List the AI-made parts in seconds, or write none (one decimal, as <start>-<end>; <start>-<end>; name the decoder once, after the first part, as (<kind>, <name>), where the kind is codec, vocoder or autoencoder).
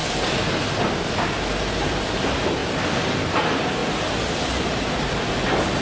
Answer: 1.8-2.6 (vocoder, BigVGAN v2); 3.2-3.8; 4.6-5.8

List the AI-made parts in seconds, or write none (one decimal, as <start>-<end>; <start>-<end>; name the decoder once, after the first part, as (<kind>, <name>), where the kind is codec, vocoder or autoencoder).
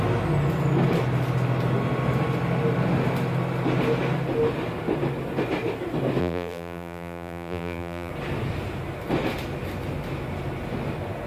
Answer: 6.2-8.1 (vocoder, BigVGAN v2)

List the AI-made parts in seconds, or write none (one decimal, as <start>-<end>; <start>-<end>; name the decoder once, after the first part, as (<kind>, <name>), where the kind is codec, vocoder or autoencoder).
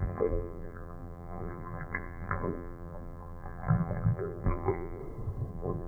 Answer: 0.0-5.0 (vocoder, BigVGAN v2); 5.5-5.9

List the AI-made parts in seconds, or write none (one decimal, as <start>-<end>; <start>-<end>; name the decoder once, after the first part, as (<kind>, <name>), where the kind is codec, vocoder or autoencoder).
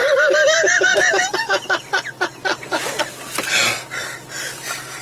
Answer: none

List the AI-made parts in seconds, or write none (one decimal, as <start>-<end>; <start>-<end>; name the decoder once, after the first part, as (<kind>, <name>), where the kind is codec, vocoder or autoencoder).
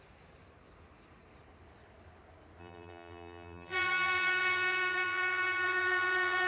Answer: 2.6-6.5 (vocoder, BigVGAN v2)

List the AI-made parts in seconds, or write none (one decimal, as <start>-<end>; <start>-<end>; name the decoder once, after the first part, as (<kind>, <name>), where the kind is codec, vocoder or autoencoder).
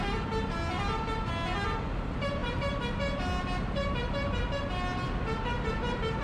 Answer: none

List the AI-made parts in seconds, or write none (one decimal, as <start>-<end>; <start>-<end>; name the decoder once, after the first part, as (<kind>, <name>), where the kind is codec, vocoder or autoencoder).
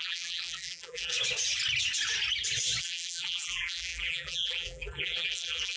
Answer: 0.0-1.1 (vocoder, BigVGAN v2); 2.8-5.8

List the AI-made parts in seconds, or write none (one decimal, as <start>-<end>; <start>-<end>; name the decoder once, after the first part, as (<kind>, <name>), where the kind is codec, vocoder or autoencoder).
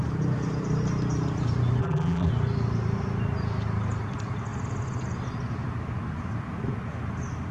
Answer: 1.8-2.3 (vocoder, BigVGAN v2)